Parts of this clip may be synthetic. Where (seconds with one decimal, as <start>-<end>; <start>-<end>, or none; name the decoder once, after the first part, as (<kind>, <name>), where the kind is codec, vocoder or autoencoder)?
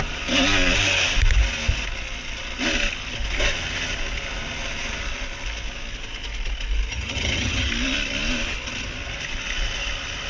6.9-7.7 (vocoder, HiFi-GAN)